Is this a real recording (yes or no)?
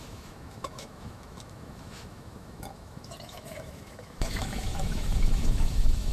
no